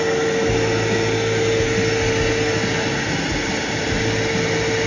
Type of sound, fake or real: real